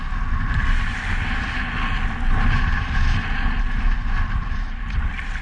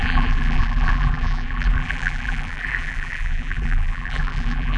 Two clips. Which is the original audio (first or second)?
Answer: first